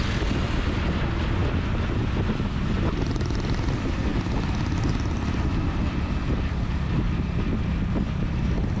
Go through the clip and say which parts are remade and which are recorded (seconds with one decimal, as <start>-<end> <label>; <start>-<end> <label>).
0.0-8.8 recorded